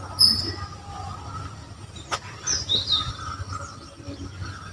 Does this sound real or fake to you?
real